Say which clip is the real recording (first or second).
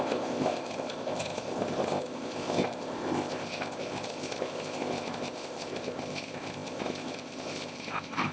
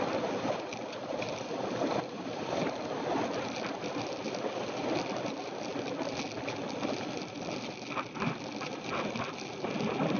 second